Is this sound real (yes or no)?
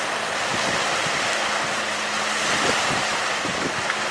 yes